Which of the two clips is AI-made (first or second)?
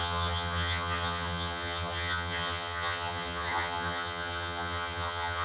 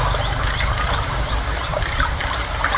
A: first